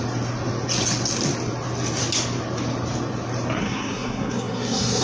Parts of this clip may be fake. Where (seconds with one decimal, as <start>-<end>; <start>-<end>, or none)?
3.6-5.0